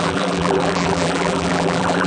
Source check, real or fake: fake